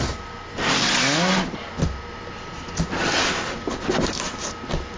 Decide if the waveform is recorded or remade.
recorded